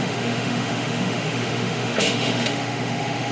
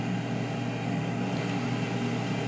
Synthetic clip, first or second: first